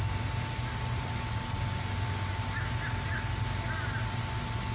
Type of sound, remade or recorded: recorded